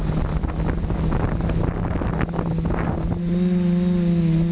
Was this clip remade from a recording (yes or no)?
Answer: no